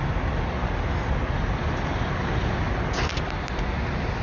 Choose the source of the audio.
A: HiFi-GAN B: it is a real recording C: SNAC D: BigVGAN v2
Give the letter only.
B